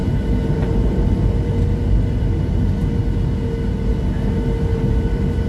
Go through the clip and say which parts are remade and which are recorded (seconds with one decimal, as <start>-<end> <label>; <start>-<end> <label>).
0.0-1.6 remade; 1.6-4.7 recorded; 4.7-5.5 remade

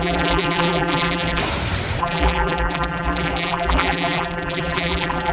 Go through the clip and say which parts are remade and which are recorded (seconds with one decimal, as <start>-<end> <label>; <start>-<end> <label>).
0.0-1.4 remade; 1.4-2.0 recorded; 2.0-5.3 remade

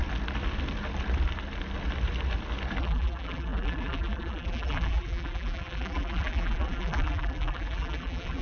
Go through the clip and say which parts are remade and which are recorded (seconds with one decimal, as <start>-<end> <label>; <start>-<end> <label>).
0.0-2.8 recorded; 2.8-8.4 remade

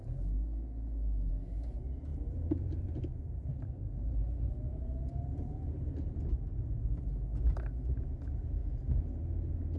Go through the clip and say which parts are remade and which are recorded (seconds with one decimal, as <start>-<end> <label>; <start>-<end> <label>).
0.0-2.1 recorded; 2.1-6.3 remade; 6.3-9.8 recorded

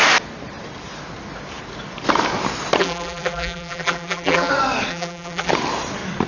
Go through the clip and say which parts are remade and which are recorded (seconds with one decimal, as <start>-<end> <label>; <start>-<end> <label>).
0.0-2.8 recorded; 2.8-4.5 remade; 4.5-4.9 recorded; 4.9-5.5 remade; 5.5-6.3 recorded

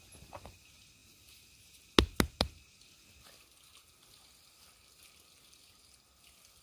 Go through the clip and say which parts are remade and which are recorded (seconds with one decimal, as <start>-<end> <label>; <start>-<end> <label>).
0.0-6.6 recorded

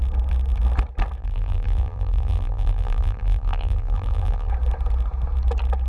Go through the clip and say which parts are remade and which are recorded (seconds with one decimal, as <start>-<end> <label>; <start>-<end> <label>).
0.0-1.2 recorded; 1.2-4.5 remade; 4.5-5.9 recorded

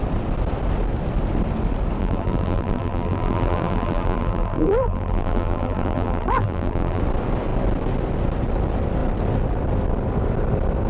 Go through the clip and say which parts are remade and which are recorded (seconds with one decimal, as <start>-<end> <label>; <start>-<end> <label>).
0.0-2.0 recorded; 2.0-7.0 remade; 7.0-10.9 recorded